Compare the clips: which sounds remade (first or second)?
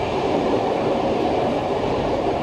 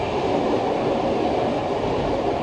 first